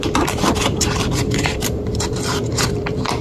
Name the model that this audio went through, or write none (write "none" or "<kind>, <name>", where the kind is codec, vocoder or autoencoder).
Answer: vocoder, BigVGAN v2